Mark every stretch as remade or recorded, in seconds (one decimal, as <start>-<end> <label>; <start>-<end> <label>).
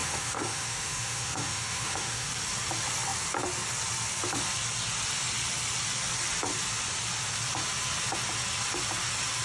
0.0-2.3 remade; 2.3-9.4 recorded